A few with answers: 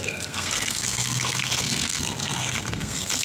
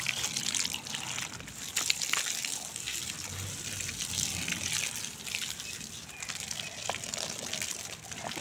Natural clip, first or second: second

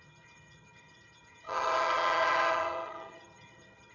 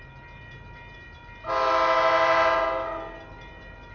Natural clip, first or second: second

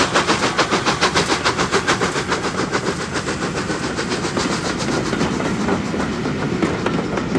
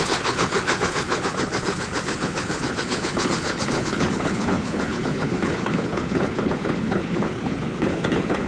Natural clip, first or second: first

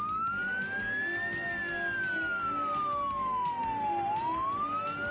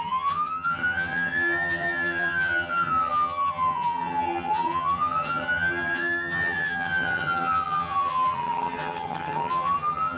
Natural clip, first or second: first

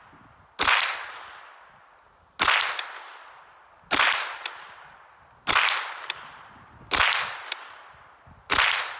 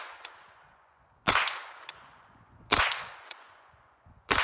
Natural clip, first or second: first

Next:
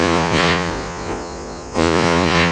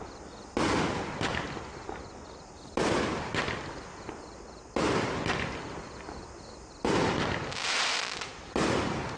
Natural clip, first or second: second